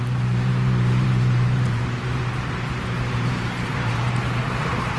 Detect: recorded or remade remade